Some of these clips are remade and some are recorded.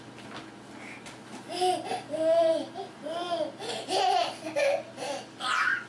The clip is recorded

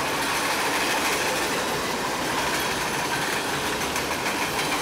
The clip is recorded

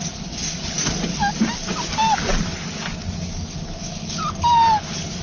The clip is recorded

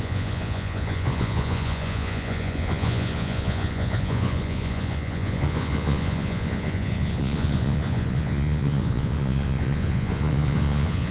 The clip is remade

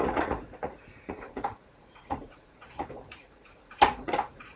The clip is remade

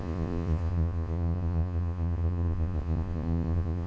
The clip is remade